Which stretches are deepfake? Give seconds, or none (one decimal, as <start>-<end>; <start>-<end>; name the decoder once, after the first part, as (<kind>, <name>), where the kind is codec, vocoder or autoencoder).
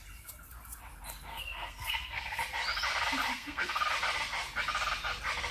1.3-2.4 (codec, SNAC); 3.3-3.8